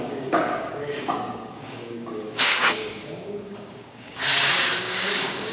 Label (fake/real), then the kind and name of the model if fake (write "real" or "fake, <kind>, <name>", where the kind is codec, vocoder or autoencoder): fake, codec, DAC